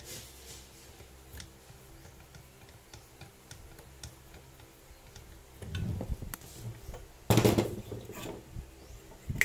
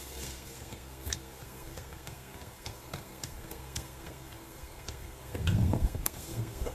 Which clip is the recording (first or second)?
first